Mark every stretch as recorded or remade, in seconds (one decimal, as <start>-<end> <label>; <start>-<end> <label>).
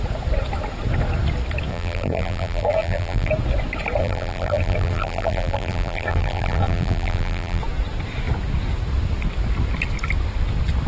0.0-1.7 recorded; 1.7-3.3 remade; 3.3-4.0 recorded; 4.0-7.6 remade; 7.6-10.9 recorded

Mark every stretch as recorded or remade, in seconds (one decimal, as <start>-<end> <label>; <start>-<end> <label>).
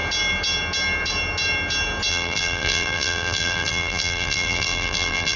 0.0-2.1 recorded; 2.1-5.4 remade